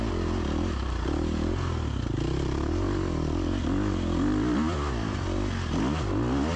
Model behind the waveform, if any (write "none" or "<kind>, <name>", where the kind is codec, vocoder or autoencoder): none